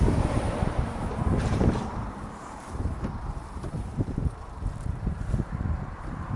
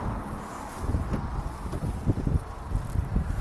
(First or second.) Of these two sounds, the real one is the second